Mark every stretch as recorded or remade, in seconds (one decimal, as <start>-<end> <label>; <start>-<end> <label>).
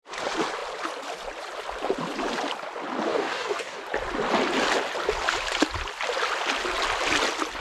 0.0-3.1 recorded; 3.1-3.8 remade; 3.8-7.6 recorded